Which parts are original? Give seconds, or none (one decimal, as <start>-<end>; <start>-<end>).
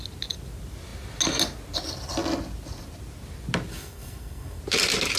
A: 0.0-3.7; 4.6-5.2